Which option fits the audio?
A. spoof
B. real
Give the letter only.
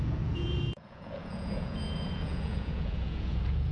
A